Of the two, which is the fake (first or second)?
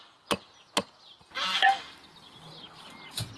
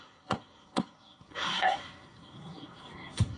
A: second